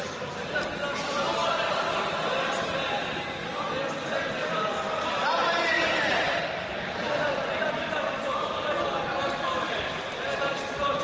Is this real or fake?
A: real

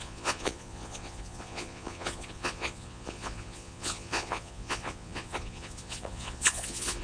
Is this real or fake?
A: fake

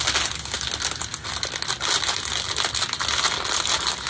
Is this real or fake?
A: real